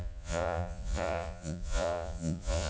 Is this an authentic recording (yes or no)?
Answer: no